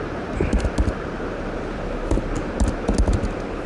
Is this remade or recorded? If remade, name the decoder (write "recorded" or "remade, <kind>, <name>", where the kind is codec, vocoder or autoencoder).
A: recorded